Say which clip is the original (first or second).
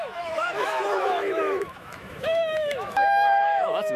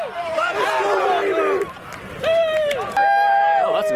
second